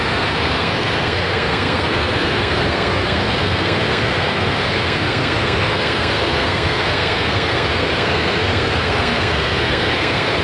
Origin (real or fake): fake